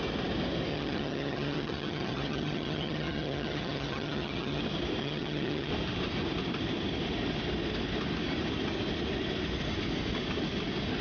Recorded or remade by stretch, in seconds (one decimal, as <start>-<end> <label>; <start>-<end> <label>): 0.0-0.7 recorded; 0.7-4.6 remade; 4.6-5.0 recorded; 5.0-5.7 remade; 5.7-11.0 recorded